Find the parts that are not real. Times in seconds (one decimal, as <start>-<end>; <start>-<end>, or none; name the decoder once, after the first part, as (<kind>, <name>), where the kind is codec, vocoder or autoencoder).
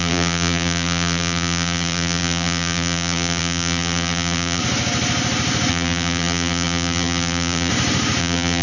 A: 0.0-4.6 (vocoder, BigVGAN v2); 5.7-7.7; 8.2-8.6